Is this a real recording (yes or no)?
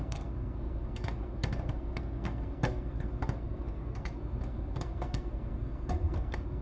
no